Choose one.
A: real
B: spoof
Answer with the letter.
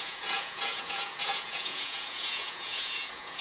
B